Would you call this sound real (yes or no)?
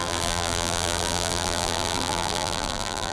no